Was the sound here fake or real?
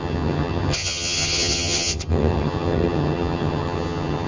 fake